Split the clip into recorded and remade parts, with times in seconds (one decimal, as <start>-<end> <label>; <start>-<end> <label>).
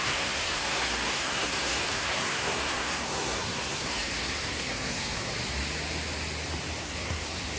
0.0-5.3 remade; 5.3-6.8 recorded; 6.8-7.6 remade